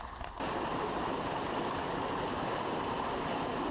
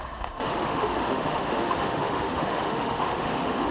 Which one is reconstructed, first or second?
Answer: second